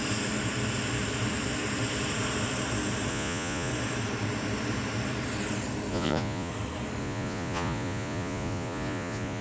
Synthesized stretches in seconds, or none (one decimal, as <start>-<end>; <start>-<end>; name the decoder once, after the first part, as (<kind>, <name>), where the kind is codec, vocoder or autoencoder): 3.1-3.7 (vocoder, Vocos); 5.9-6.5; 7.0-9.4